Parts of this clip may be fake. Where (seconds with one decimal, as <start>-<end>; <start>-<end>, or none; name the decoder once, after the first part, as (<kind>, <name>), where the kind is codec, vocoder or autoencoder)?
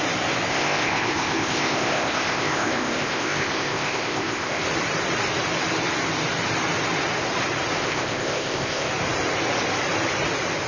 0.5-4.6 (codec, ZipCodec); 7.8-8.9